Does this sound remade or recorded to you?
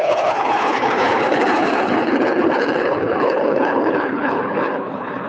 remade